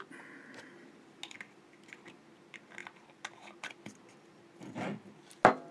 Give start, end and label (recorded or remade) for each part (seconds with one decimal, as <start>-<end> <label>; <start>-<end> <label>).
0.0-5.7 recorded